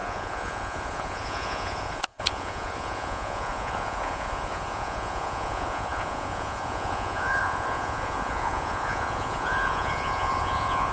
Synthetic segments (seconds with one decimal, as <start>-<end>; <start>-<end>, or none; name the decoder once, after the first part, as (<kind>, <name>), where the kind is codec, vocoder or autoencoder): 0.0-10.9 (vocoder, Vocos)